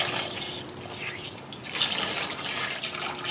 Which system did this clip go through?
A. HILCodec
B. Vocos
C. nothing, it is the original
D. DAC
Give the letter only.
C